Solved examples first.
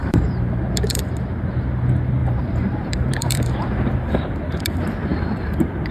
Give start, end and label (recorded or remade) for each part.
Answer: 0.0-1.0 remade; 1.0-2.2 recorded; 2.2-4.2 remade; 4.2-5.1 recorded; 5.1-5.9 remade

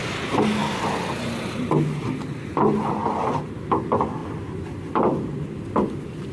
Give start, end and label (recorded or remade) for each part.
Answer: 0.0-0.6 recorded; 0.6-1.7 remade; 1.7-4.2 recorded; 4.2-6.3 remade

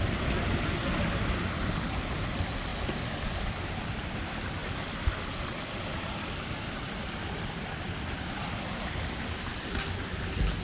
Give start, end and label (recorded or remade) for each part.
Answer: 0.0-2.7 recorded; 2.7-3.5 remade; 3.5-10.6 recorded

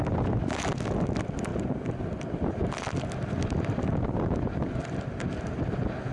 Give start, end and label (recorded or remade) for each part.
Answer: 0.0-1.5 recorded; 1.5-5.2 remade; 5.2-6.1 recorded